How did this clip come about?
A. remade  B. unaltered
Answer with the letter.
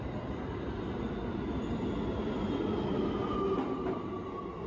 B